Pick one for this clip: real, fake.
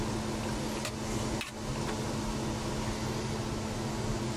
real